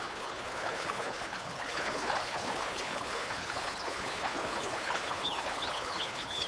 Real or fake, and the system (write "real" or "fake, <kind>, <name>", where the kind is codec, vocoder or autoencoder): fake, codec, HILCodec